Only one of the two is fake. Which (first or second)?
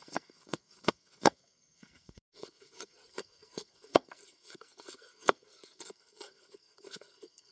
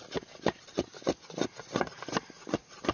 first